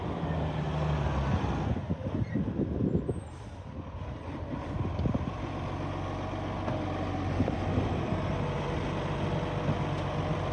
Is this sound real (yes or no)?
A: yes